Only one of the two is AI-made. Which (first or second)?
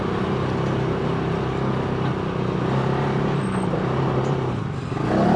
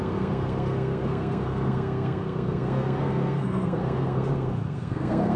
second